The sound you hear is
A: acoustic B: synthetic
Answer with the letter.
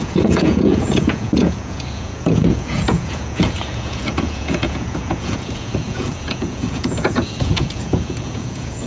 B